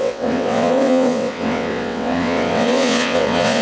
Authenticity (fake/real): fake